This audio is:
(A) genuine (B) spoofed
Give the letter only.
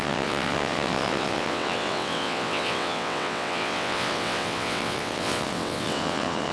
B